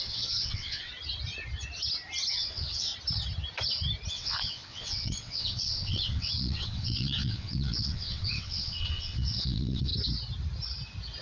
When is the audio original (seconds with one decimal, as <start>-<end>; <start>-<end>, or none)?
0.9-2.3; 2.9-4.1; 9.9-11.2